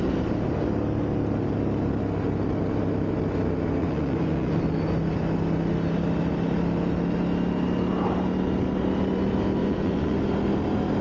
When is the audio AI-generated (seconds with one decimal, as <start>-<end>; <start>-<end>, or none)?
3.8-4.6; 9.6-10.2